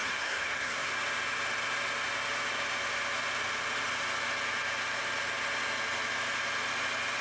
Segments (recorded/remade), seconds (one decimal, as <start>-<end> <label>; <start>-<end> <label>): 0.0-0.9 remade; 0.9-7.2 recorded